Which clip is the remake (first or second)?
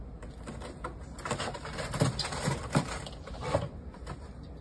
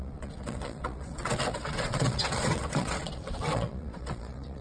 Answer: second